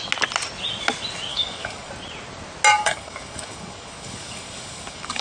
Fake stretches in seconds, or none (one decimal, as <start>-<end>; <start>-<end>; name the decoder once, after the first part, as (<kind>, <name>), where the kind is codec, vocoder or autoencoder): 1.3-1.9 (codec, DAC); 2.7-5.2